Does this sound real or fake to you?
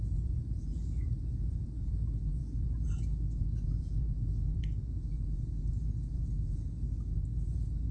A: fake